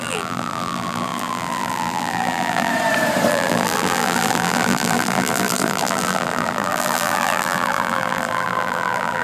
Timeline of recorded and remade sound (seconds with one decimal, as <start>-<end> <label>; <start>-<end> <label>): 0.0-2.7 remade; 2.7-3.3 recorded; 3.3-9.2 remade